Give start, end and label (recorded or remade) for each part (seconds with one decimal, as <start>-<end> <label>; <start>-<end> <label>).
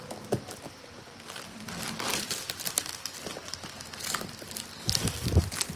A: 0.0-5.8 recorded